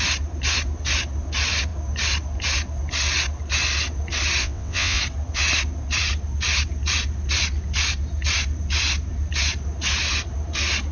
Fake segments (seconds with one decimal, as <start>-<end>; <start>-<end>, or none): 4.4-5.0